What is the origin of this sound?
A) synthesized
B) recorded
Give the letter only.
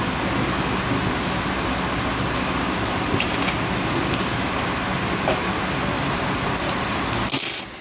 B